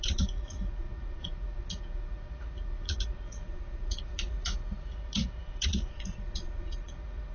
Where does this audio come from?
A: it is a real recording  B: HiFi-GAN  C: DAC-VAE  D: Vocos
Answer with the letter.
D